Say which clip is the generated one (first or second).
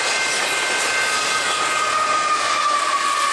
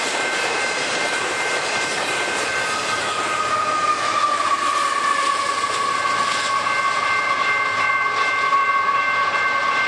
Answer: second